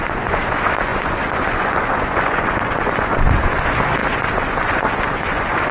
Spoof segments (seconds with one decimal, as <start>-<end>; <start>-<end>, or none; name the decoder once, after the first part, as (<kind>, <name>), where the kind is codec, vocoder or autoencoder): 0.0-5.7 (vocoder, Vocos)